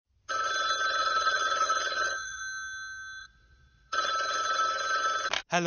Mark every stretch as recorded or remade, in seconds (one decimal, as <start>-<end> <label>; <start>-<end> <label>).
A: 0.0-1.0 recorded; 1.0-2.4 remade; 2.4-3.2 recorded; 3.2-4.1 remade; 4.1-5.7 recorded